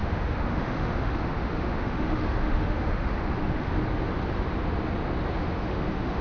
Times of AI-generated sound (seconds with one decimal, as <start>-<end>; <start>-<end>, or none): 0.0-3.7; 5.4-6.2